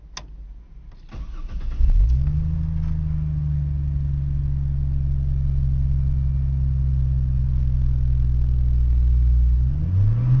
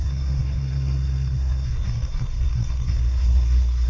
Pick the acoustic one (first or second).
first